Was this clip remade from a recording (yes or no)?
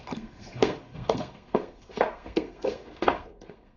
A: yes